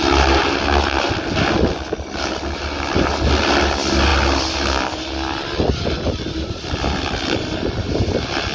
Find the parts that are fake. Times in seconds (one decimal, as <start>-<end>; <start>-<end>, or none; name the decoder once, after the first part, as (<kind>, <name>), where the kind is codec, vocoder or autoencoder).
none